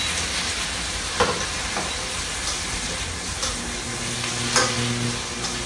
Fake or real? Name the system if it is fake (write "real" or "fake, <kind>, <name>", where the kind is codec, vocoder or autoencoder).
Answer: real